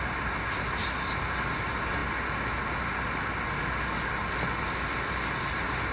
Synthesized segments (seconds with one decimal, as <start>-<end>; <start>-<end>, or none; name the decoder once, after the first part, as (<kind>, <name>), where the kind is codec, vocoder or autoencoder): none